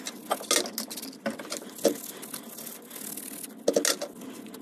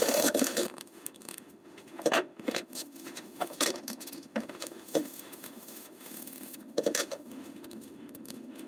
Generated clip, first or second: second